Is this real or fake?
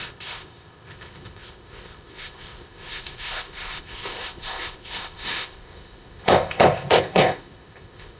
fake